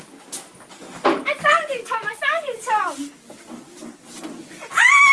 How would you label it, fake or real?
real